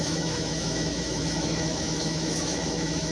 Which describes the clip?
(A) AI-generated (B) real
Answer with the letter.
A